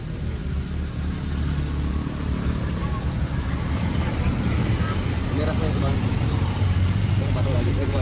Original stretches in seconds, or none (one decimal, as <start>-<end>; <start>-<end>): 0.4-1.9; 2.8-3.3; 5.2-6.1